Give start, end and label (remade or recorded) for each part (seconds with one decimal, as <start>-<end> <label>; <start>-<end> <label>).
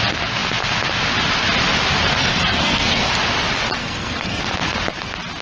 0.0-2.2 recorded; 2.2-3.1 remade; 3.1-3.8 recorded; 3.8-4.4 remade; 4.4-5.4 recorded